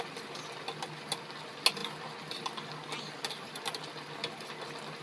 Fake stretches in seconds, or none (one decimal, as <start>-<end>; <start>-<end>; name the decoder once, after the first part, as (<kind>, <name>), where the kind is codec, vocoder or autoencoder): none

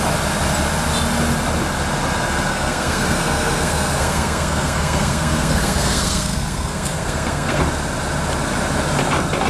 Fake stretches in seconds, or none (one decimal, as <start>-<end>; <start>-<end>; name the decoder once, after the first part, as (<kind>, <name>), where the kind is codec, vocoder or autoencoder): 2.5-7.6 (codec, SNAC)

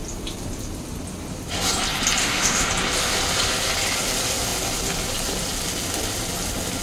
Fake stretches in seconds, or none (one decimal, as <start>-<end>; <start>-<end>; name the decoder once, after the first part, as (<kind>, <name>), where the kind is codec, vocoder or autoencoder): 2.2-2.7 (autoencoder, DAC-VAE)

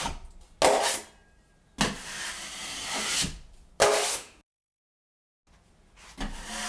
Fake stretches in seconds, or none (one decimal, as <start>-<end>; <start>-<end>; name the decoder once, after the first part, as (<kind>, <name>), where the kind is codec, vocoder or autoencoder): 4.1-4.8 (autoencoder, DAC-VAE)